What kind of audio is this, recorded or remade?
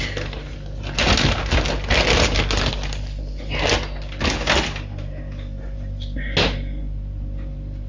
recorded